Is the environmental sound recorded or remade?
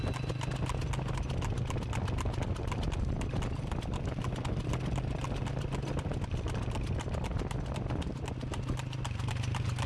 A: recorded